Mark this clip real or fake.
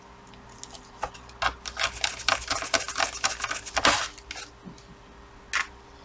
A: real